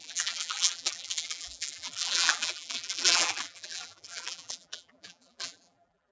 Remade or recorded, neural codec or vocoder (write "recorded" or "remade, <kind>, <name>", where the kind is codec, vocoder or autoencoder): remade, vocoder, BigVGAN v2